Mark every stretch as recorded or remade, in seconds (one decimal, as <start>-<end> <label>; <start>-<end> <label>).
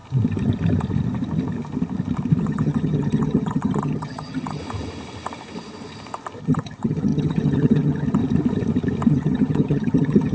0.0-2.4 recorded; 2.4-4.6 remade; 4.6-6.4 recorded; 6.4-8.2 remade; 8.2-9.1 recorded; 9.1-10.3 remade